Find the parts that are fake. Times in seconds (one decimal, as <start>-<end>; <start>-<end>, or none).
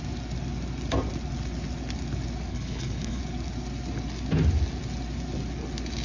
2.5-3.2